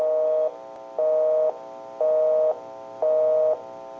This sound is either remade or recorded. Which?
recorded